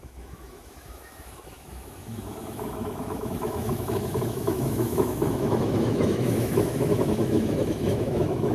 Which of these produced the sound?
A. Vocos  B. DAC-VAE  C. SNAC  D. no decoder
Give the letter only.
B